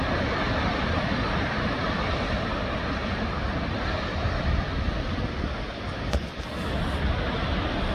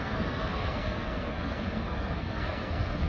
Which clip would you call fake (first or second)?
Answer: second